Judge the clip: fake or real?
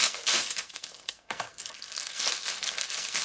fake